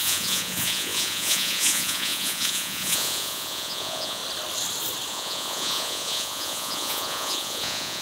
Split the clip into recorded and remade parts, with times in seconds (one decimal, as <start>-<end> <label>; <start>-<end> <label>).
0.0-4.2 remade; 4.2-5.1 recorded; 5.1-8.0 remade